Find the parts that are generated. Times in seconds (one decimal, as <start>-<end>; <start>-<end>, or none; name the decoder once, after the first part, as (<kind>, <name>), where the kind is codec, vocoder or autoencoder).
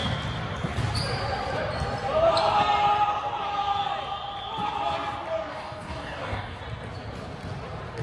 5.5-6.6 (codec, DAC)